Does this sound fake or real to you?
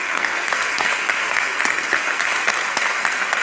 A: fake